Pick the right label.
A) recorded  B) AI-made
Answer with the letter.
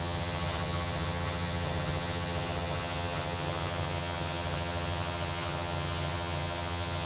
B